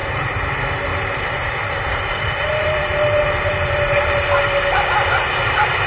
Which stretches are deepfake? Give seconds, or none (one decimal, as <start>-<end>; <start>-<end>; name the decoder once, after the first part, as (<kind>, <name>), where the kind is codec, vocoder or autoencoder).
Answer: 0.0-0.5 (vocoder, BigVGAN v2); 0.9-4.4